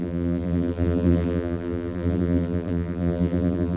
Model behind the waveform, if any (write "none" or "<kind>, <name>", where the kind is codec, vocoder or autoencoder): vocoder, BigVGAN v2